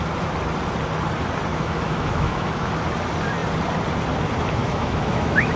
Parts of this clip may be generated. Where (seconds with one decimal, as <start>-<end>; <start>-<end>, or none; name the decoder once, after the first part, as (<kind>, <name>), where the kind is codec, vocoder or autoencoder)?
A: 1.5-2.7 (autoencoder, DAC-VAE); 4.6-5.6